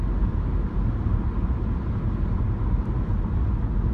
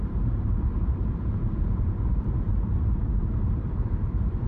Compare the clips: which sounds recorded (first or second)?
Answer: first